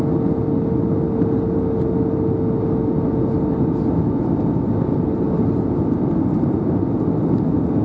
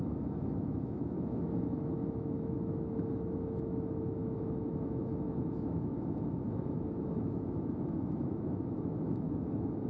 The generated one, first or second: second